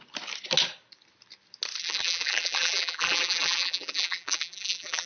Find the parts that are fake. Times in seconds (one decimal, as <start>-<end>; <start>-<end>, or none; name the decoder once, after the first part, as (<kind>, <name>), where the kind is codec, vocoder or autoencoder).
1.8-5.1 (vocoder, BigVGAN v2)